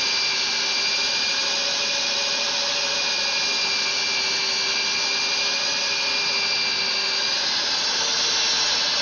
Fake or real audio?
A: real